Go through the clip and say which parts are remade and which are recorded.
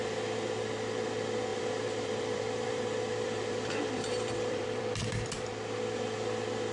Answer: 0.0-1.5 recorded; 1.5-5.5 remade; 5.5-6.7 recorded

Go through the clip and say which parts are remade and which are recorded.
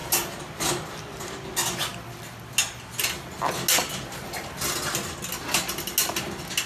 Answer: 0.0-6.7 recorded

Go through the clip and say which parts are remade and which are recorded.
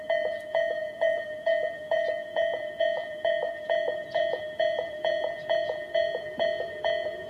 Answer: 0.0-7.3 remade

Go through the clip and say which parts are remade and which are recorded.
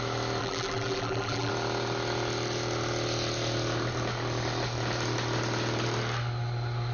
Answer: 0.0-0.4 recorded; 0.4-1.5 remade; 1.5-6.9 recorded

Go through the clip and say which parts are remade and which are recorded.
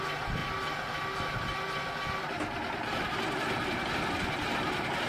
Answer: 0.0-5.1 recorded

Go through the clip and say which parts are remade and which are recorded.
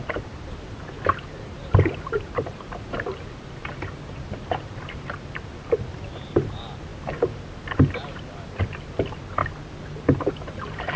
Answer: 0.0-9.4 remade; 9.4-10.3 recorded; 10.3-11.0 remade